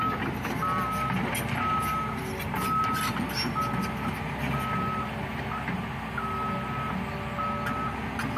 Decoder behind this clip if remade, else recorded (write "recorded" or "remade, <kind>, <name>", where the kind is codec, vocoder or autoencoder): recorded